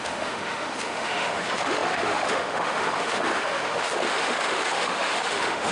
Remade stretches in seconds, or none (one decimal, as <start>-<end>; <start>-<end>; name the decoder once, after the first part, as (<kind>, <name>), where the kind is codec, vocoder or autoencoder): 0.0-5.7 (autoencoder, DAC-VAE)